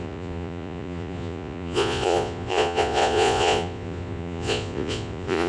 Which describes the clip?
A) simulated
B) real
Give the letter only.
A